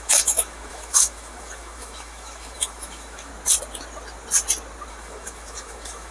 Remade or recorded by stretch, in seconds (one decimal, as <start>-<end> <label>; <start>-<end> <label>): 0.0-3.3 remade; 3.3-4.9 recorded; 4.9-6.1 remade